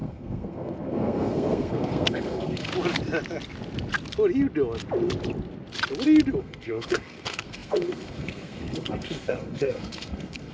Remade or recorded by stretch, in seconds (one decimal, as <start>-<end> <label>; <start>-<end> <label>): 0.0-2.7 remade; 2.7-6.4 recorded; 6.4-10.5 remade